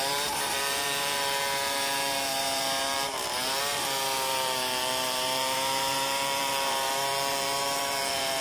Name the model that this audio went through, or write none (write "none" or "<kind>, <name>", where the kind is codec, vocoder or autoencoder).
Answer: vocoder, BigVGAN v2